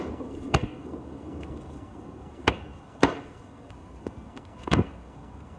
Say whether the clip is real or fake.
fake